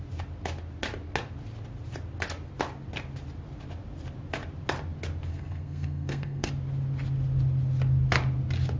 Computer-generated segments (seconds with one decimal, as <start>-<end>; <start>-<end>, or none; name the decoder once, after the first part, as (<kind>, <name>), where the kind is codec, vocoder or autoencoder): 5.3-6.5 (codec, SNAC)